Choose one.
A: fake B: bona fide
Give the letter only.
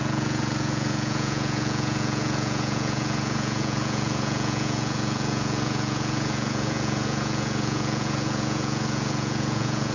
A